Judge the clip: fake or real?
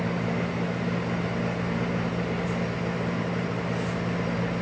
real